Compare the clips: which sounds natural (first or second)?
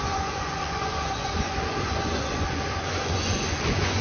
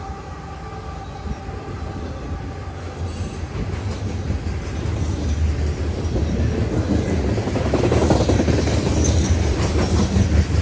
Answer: second